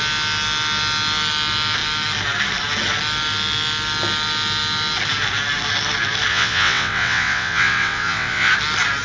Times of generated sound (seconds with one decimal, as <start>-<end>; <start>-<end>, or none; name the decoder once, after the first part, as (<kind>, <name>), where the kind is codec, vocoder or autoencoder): 6.3-8.5 (vocoder, WaveNeXt)

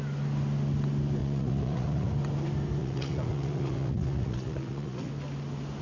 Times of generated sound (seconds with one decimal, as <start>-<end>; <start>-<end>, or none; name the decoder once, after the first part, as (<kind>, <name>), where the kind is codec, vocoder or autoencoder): 1.2-2.1 (vocoder, Vocos); 2.8-5.1